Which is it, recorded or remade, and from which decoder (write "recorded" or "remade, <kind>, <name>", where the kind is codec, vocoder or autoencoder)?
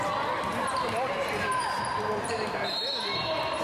remade, vocoder, BigVGAN v2